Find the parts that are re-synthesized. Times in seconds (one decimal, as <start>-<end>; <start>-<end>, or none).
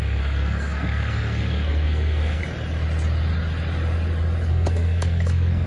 0.0-2.4; 4.5-5.7